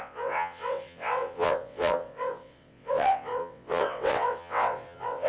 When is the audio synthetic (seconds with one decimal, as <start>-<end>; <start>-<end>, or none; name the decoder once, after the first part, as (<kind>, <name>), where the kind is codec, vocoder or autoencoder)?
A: 0.0-5.3 (vocoder, WaveNeXt)